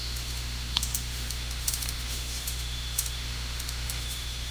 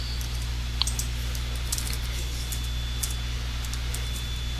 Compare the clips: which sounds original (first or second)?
second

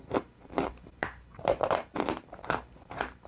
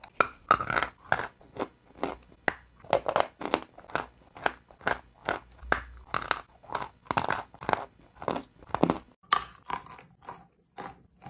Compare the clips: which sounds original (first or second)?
second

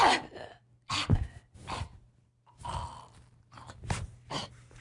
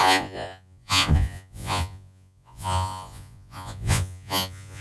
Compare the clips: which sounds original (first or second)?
first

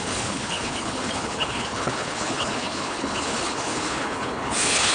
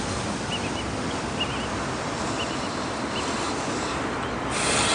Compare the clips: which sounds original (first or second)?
second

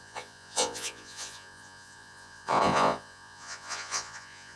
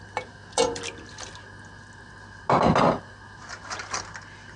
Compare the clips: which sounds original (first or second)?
second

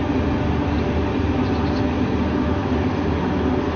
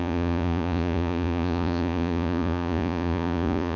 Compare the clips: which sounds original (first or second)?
first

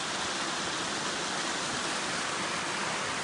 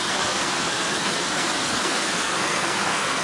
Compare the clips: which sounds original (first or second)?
first